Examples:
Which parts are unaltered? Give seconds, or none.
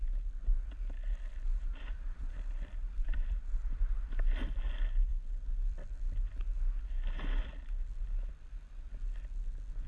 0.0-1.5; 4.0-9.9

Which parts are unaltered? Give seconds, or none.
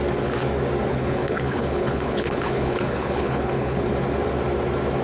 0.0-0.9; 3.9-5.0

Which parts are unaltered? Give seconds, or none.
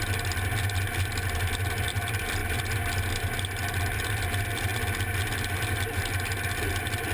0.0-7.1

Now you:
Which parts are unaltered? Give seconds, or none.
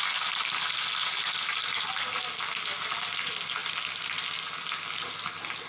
0.0-5.7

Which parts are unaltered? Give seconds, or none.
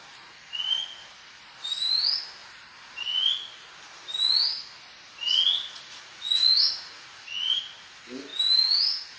0.0-5.2; 7.6-9.2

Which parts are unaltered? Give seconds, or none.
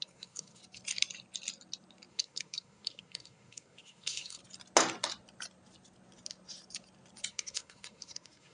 0.6-2.1; 4.4-7.3